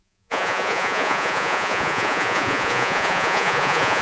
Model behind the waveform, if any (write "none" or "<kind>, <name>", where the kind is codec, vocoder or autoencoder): vocoder, Vocos